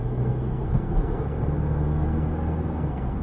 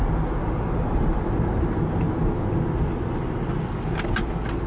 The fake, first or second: first